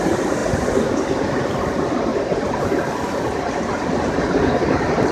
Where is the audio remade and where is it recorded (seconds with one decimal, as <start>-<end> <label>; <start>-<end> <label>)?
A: 0.0-5.1 recorded